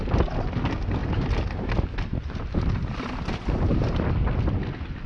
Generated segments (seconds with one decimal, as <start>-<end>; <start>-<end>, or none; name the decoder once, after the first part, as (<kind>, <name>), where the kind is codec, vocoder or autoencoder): 1.0-4.1 (vocoder, BigVGAN v2)